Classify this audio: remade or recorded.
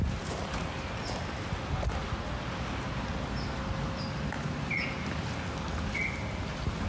recorded